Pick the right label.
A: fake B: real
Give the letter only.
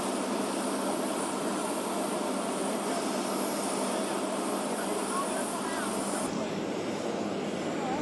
B